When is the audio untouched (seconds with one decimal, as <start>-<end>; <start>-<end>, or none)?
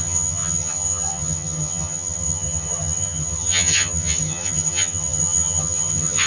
none